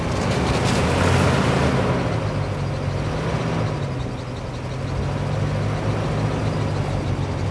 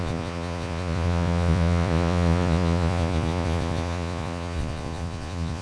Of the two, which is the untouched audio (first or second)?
first